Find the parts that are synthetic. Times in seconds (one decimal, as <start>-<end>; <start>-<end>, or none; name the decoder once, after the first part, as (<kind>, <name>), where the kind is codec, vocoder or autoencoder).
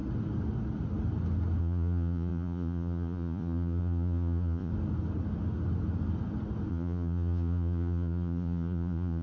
1.6-4.7 (vocoder, Vocos); 6.7-9.2